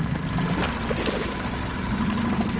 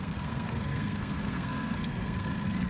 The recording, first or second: first